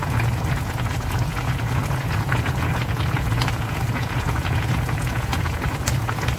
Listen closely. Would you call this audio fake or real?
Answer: fake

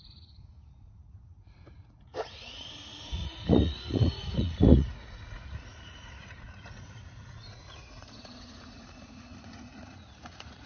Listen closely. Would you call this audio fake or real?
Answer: fake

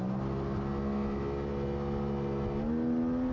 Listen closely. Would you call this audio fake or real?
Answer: real